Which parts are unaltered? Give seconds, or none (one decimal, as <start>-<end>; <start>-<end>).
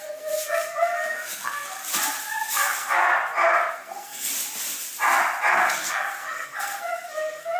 1.8-2.5; 3.0-3.7; 4.3-5.5